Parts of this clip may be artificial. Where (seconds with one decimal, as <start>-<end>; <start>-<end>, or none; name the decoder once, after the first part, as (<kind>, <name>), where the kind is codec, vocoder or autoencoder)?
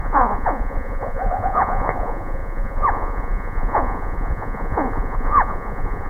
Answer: 0.0-6.1 (vocoder, Vocos)